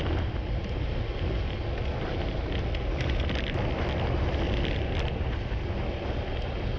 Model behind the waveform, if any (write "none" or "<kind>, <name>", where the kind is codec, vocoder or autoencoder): none